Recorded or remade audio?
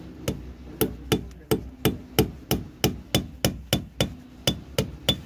recorded